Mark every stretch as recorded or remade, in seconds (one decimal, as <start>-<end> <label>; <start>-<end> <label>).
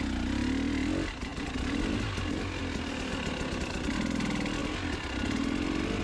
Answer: 0.0-6.0 recorded